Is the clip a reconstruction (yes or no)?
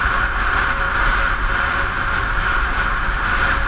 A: no